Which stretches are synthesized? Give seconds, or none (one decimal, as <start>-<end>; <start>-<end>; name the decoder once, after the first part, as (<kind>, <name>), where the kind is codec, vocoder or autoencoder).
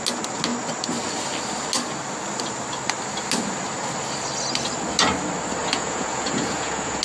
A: 5.6-7.0 (vocoder, Vocos)